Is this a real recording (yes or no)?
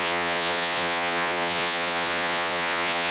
no